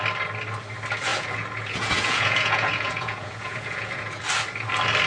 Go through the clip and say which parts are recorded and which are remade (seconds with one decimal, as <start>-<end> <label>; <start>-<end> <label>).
0.0-1.1 recorded; 1.1-4.2 remade; 4.2-5.1 recorded